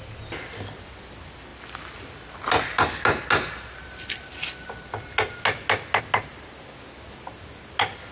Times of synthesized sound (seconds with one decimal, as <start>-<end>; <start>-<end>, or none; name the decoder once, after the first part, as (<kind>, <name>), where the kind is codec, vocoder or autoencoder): none